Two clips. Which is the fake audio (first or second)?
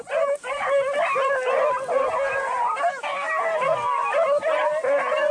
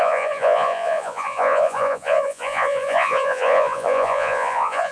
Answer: second